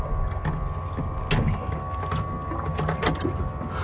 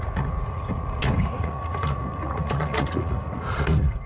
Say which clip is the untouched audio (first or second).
first